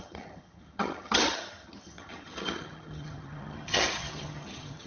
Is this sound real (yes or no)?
no